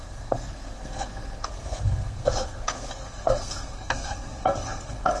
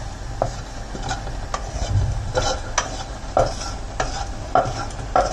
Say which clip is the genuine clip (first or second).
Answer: second